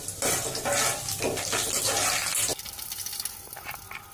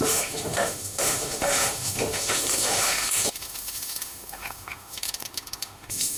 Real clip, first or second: first